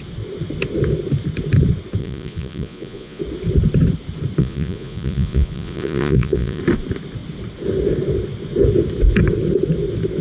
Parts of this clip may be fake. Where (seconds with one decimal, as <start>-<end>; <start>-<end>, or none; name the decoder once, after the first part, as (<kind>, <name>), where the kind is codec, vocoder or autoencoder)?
2.0-3.2 (vocoder, Vocos); 4.4-6.6